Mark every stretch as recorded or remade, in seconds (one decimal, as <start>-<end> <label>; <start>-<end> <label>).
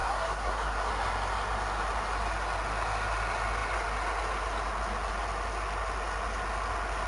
0.0-0.9 remade; 0.9-7.1 recorded